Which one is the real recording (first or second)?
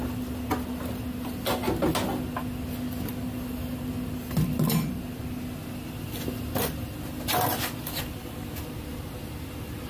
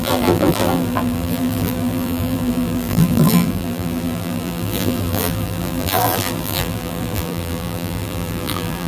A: first